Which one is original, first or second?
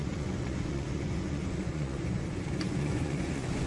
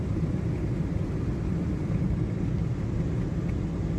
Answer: second